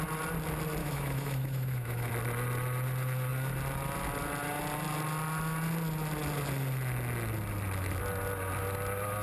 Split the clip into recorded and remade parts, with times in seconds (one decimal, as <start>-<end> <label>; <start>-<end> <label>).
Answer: 0.0-0.8 recorded; 0.8-2.1 remade; 2.1-9.2 recorded